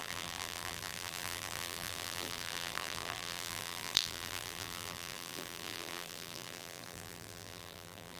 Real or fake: fake